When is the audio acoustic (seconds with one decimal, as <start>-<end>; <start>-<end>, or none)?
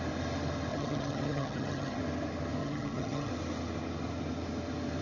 0.0-0.7; 2.0-2.6; 3.3-5.0